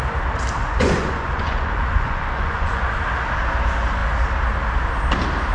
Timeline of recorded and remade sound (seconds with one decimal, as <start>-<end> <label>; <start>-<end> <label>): 0.0-0.6 recorded; 0.6-3.0 remade; 3.0-5.5 recorded